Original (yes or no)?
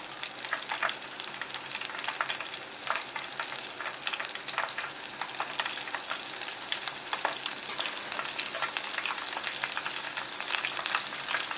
yes